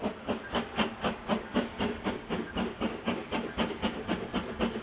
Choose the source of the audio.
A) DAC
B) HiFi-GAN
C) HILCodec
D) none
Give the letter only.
D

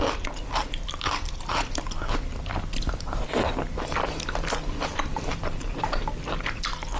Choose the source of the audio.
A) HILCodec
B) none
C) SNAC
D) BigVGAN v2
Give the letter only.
B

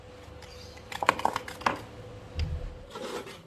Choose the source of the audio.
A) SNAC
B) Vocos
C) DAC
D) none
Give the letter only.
D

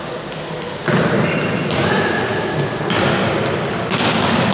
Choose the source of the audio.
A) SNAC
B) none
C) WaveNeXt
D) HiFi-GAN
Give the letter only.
B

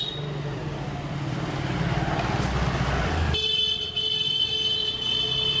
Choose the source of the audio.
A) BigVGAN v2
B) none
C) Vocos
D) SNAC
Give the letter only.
B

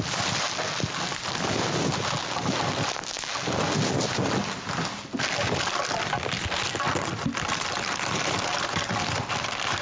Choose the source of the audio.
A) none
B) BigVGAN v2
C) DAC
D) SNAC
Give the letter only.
A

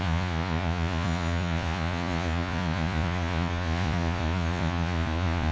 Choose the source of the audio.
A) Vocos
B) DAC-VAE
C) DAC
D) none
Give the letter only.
A